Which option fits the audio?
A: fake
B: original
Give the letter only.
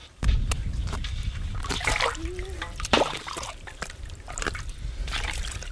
A